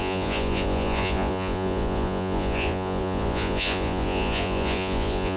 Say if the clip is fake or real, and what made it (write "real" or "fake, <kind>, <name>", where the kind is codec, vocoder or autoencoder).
fake, vocoder, Vocos